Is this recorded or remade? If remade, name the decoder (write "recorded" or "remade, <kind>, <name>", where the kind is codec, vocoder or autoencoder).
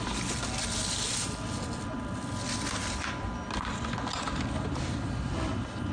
recorded